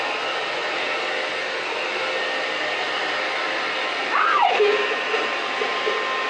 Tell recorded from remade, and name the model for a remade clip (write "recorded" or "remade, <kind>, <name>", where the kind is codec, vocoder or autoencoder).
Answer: recorded